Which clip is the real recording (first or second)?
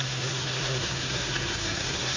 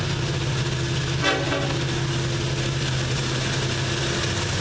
second